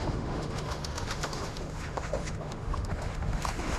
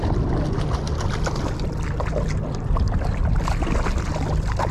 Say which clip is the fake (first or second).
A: first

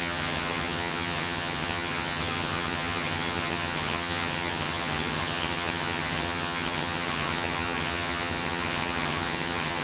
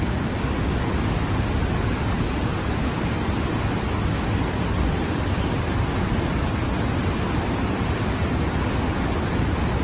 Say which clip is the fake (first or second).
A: first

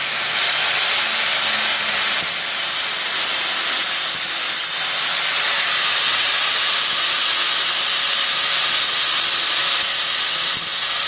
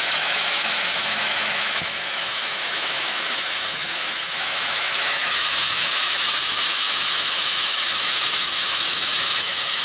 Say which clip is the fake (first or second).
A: second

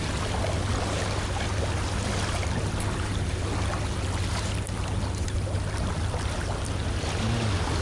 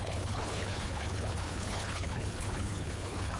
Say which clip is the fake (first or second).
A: second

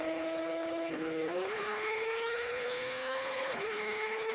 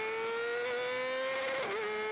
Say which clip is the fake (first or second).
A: first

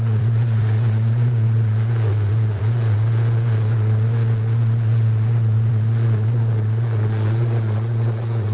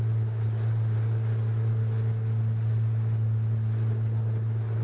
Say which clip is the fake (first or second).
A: first